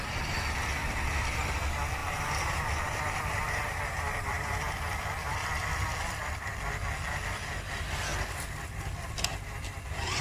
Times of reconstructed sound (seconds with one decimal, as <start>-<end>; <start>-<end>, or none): 2.0-4.6